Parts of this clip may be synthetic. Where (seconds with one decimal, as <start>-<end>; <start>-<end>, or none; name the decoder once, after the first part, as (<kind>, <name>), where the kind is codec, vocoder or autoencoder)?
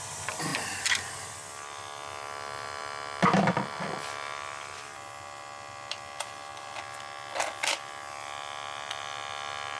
none